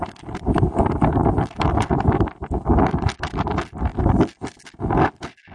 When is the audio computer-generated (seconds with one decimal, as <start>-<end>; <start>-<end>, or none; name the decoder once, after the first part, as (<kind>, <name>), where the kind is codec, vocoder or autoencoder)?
none